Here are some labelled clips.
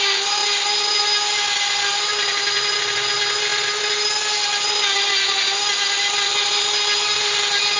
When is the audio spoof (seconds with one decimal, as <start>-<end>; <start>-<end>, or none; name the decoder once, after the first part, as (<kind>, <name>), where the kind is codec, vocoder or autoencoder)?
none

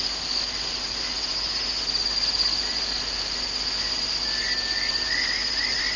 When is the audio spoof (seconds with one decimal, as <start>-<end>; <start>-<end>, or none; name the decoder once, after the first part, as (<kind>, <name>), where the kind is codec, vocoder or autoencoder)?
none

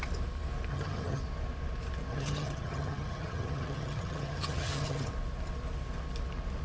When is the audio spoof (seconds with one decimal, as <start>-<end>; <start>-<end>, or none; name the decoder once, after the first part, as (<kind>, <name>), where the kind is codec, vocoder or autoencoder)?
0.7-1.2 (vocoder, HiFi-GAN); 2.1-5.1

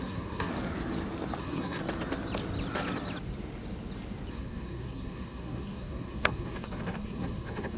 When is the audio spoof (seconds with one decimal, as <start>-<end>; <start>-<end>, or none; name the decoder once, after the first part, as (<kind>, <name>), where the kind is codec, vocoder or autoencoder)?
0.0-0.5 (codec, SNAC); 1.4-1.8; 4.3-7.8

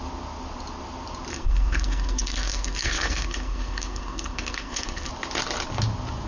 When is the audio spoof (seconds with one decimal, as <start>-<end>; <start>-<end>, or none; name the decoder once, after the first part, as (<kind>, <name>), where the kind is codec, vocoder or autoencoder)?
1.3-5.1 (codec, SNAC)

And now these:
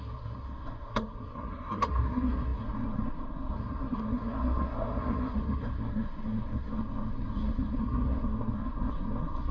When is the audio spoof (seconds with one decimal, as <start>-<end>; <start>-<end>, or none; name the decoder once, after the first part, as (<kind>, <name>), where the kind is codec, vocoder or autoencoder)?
0.0-9.5 (codec, SNAC)

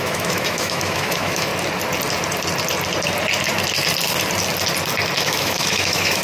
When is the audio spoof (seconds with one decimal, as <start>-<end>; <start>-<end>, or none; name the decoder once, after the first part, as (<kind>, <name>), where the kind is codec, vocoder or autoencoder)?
0.0-1.5 (autoencoder, DAC-VAE); 5.2-6.2

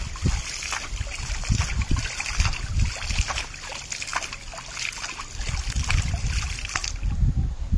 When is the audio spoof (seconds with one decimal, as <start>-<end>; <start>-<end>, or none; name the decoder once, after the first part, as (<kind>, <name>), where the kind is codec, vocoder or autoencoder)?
none